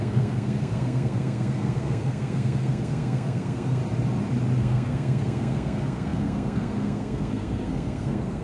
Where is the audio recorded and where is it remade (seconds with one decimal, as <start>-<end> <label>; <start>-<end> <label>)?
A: 0.0-3.8 remade; 3.8-4.6 recorded; 4.6-8.4 remade